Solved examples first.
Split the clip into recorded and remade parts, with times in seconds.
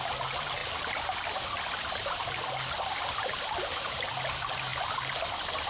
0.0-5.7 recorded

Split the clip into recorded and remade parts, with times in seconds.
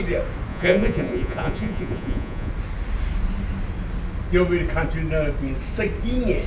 0.0-0.5 recorded; 0.5-2.5 remade; 2.5-6.5 recorded